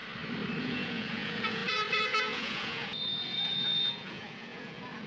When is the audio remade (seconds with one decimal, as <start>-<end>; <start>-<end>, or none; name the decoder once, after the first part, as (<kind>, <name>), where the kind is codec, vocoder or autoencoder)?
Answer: 0.6-5.1 (vocoder, Vocos)